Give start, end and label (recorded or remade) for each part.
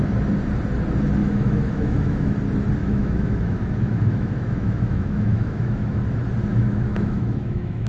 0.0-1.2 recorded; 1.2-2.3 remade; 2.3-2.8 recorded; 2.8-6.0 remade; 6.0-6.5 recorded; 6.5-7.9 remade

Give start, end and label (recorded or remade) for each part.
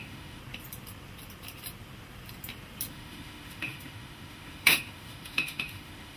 0.0-0.4 remade; 0.4-2.9 recorded; 2.9-6.2 remade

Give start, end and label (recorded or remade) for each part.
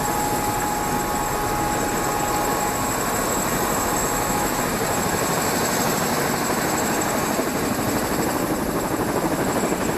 0.0-4.0 recorded; 4.0-4.6 remade; 4.6-10.0 recorded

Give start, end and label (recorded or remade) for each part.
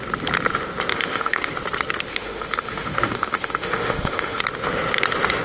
0.0-0.9 recorded; 0.9-1.5 remade; 1.5-2.1 recorded; 2.1-4.4 remade; 4.4-5.4 recorded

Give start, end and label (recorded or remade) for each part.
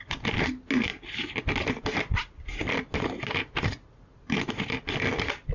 0.0-5.5 recorded